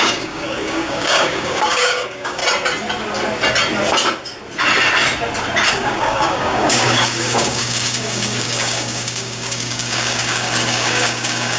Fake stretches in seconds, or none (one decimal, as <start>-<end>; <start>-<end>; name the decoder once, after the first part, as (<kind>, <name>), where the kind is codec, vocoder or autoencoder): 0.0-2.4 (codec, DAC); 5.7-11.6

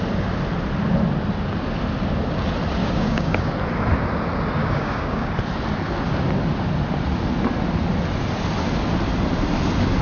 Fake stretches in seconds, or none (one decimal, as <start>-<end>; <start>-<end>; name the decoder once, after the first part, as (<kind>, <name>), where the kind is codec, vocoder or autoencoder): 2.8-3.5 (codec, DAC); 4.6-5.3

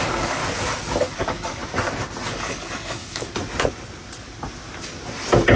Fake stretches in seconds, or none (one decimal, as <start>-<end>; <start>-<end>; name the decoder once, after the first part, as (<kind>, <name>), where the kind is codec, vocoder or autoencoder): 0.0-0.4 (codec, DAC); 1.0-1.6; 2.3-3.3

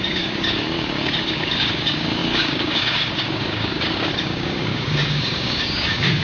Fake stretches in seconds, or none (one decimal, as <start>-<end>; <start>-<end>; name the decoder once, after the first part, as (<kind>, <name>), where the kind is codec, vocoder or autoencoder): 0.0-6.2 (codec, DAC)

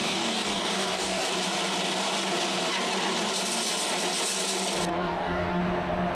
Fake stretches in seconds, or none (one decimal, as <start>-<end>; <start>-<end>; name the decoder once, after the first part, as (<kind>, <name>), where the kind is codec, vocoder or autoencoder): 0.0-1.3 (codec, DAC); 4.9-5.6

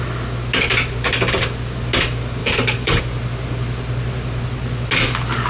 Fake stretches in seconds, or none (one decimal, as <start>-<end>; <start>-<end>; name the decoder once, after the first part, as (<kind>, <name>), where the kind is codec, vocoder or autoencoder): 2.4-3.0 (codec, DAC)

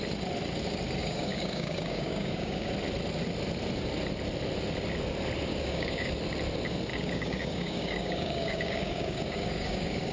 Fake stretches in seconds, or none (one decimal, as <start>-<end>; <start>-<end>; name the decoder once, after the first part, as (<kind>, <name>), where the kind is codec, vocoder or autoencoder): 1.0-2.7 (codec, DAC); 5.5-6.1; 6.9-10.1